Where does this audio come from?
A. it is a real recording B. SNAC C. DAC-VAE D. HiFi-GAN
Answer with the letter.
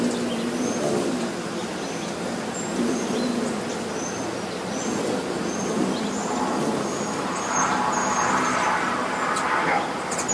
A